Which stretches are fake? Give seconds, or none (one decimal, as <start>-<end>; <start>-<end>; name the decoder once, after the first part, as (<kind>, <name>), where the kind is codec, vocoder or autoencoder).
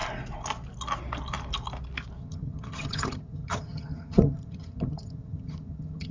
2.2-6.1 (vocoder, HiFi-GAN)